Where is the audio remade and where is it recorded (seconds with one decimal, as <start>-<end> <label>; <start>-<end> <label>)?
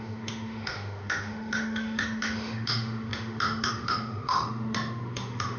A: 0.0-5.6 remade